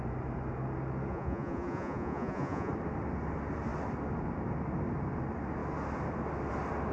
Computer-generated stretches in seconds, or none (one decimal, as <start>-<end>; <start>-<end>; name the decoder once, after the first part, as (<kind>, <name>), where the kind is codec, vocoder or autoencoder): 1.1-2.7 (vocoder, Vocos)